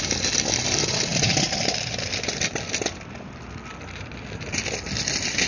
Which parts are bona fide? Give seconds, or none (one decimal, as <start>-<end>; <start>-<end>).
none